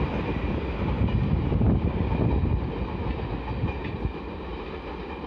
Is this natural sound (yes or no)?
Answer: yes